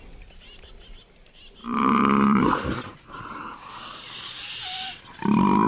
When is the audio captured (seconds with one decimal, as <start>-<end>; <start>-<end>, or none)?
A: 0.0-1.6; 5.0-5.7